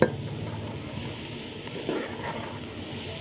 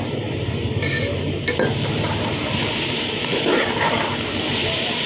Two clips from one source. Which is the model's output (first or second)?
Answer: second